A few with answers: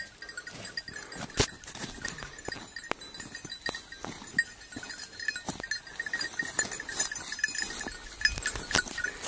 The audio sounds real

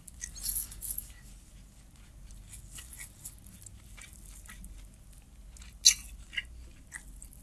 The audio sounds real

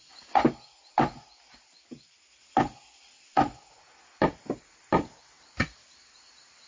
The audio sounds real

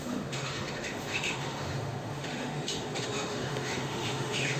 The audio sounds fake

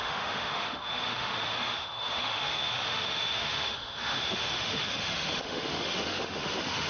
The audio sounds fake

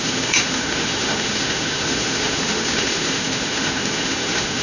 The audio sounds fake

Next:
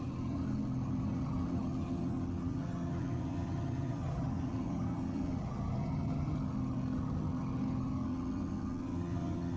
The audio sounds fake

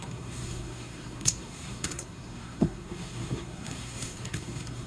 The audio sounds fake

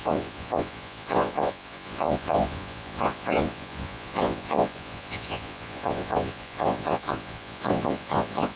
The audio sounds fake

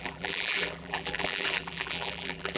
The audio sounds fake